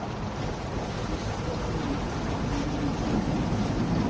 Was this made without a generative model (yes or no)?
no